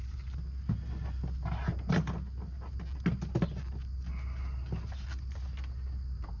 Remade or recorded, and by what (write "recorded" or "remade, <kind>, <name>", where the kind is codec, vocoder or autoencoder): recorded